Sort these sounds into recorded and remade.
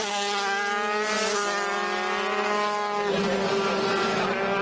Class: recorded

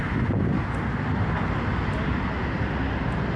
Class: recorded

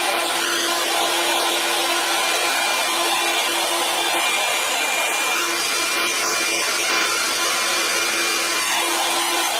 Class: recorded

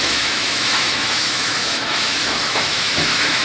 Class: remade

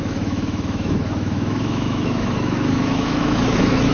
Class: remade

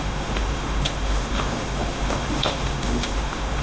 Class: remade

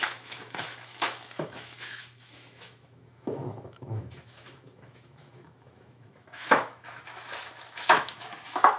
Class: remade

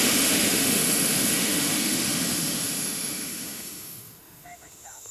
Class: remade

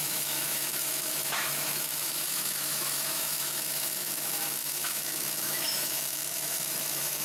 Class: remade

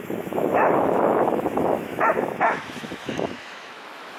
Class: remade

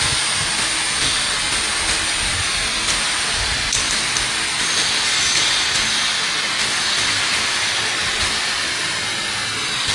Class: recorded